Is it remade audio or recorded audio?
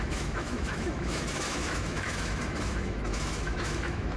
remade